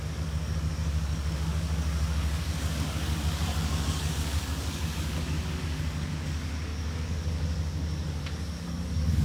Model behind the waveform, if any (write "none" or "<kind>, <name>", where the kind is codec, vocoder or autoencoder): codec, DAC